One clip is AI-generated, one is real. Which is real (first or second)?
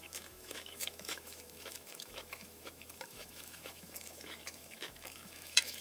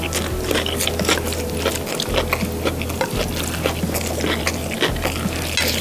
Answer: second